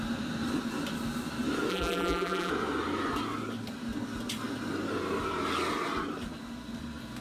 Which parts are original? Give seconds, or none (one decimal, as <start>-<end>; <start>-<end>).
0.0-1.7; 2.5-7.2